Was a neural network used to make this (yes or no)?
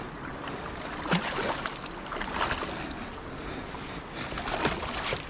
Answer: no